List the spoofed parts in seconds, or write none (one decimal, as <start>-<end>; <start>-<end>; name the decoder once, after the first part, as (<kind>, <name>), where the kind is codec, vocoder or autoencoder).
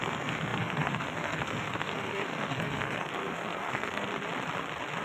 0.0-4.1 (codec, SNAC)